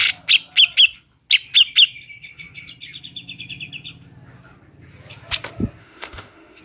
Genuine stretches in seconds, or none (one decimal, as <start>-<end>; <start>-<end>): 0.0-5.8

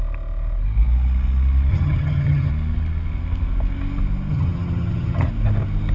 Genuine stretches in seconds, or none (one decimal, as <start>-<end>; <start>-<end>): 0.0-1.7; 2.5-4.3; 5.3-5.9

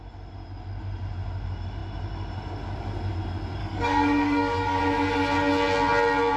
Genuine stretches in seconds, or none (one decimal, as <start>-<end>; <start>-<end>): 0.0-3.6; 4.8-6.4